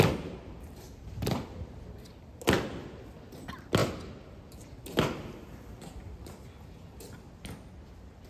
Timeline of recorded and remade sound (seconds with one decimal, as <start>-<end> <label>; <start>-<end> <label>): 0.0-8.3 recorded